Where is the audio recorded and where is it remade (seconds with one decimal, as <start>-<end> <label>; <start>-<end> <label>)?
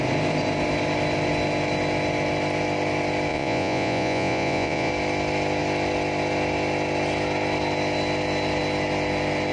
0.0-3.3 recorded; 3.3-4.9 remade; 4.9-9.5 recorded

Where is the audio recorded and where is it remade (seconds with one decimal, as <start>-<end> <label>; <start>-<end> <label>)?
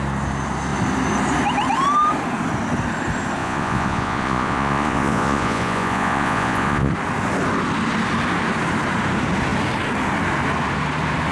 0.0-3.4 recorded; 3.4-6.9 remade; 6.9-11.3 recorded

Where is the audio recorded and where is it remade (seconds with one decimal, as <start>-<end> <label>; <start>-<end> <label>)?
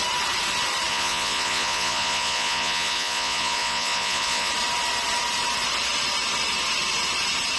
0.0-0.9 recorded; 0.9-4.5 remade; 4.5-7.6 recorded